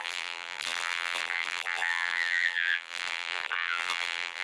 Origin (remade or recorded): remade